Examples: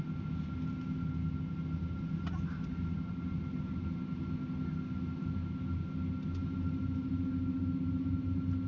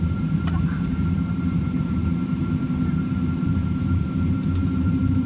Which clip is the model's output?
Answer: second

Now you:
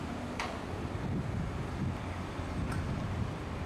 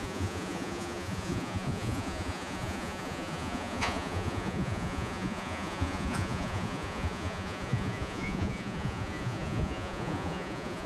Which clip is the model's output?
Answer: second